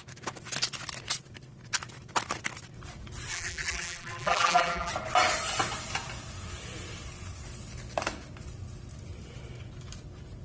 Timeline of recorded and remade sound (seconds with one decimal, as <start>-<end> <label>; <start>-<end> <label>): 0.0-3.3 recorded; 3.3-4.9 remade; 4.9-10.4 recorded